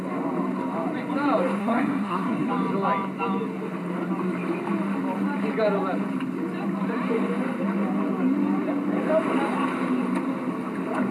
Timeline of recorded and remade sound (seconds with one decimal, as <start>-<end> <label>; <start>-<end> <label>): 0.0-1.6 recorded; 1.6-2.5 remade; 2.5-11.1 recorded